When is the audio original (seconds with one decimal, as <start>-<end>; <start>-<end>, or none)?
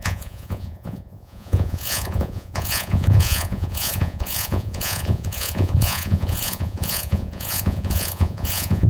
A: none